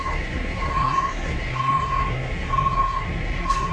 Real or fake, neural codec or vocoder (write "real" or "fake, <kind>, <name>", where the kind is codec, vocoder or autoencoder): fake, codec, SNAC